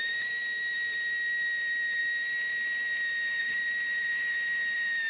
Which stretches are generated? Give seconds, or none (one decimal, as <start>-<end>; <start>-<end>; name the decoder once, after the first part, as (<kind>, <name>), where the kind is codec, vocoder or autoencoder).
none